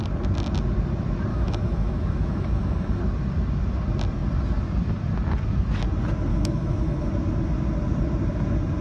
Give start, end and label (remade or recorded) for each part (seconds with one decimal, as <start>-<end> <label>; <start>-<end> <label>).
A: 0.0-1.3 recorded; 1.3-3.0 remade; 3.0-6.3 recorded; 6.3-7.1 remade; 7.1-8.8 recorded